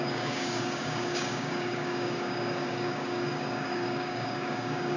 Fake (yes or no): yes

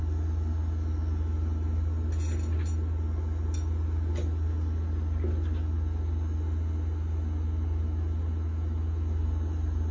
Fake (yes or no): no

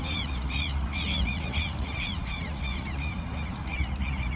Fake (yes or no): yes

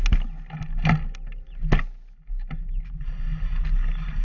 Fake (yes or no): no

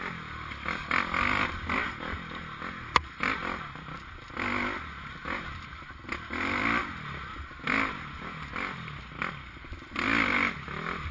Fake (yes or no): no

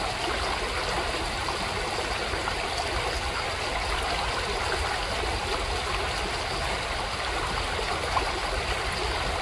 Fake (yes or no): no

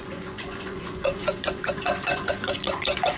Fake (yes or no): yes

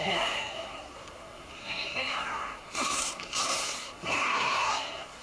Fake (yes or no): yes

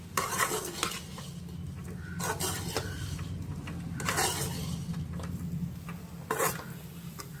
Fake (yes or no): no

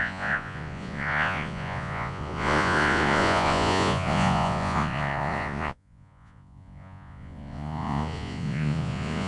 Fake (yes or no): yes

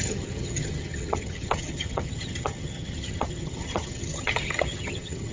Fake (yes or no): yes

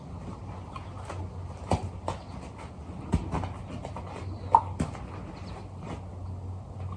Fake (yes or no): no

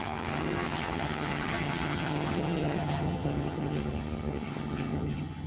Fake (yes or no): yes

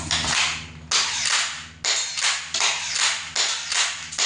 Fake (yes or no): no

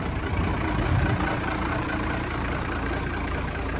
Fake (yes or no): yes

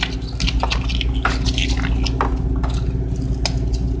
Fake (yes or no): no